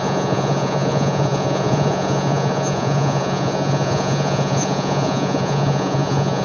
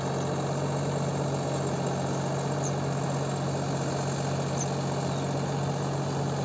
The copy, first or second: first